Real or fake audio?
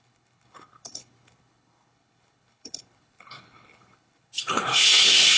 fake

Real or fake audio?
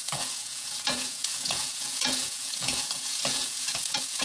fake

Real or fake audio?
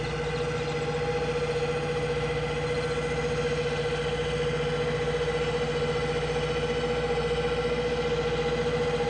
real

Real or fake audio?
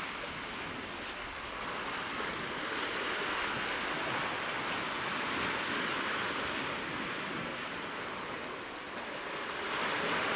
real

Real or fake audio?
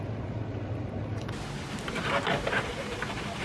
real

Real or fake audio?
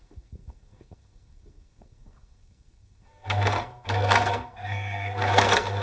fake